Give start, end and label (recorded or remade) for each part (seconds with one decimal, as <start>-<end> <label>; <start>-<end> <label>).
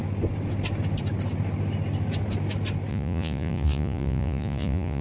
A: 0.0-2.9 recorded; 2.9-5.0 remade